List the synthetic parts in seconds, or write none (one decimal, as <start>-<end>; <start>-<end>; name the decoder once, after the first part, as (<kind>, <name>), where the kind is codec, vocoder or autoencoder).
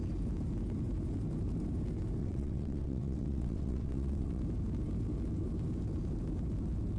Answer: 2.2-4.4 (vocoder, WaveNeXt)